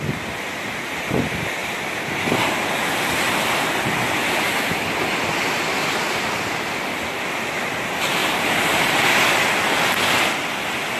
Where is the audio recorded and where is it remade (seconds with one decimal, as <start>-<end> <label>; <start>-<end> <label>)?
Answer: 0.0-11.0 recorded

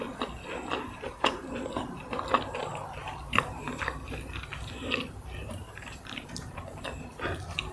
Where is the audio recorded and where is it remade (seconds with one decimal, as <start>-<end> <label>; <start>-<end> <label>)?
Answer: 0.0-3.0 recorded; 3.0-3.8 remade; 3.8-5.4 recorded; 5.4-6.6 remade; 6.6-7.7 recorded